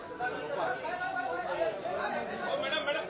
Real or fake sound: real